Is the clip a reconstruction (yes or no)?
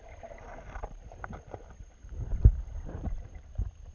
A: yes